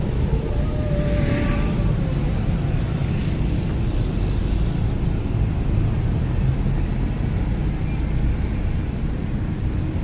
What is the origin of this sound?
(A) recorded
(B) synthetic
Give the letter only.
A